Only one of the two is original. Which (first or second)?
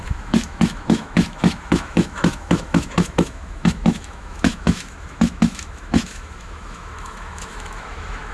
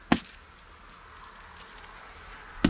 second